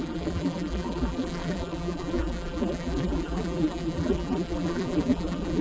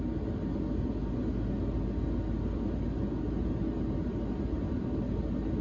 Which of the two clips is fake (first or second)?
first